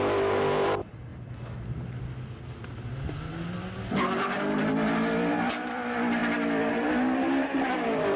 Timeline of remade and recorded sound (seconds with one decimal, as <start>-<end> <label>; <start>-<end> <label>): 0.0-8.2 recorded